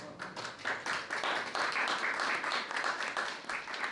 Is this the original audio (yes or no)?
yes